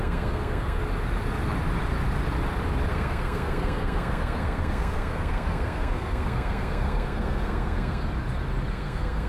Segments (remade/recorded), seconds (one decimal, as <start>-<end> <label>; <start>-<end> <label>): 0.0-0.8 remade; 0.8-2.9 recorded; 2.9-8.0 remade; 8.0-8.7 recorded; 8.7-9.3 remade